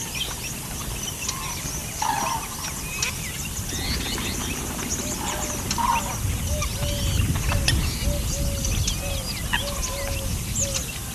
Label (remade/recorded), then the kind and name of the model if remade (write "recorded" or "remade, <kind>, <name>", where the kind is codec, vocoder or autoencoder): recorded